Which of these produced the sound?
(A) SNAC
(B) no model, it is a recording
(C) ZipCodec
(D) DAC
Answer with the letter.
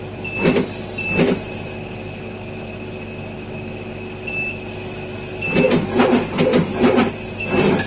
B